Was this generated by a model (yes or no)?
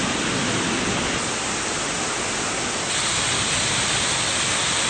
no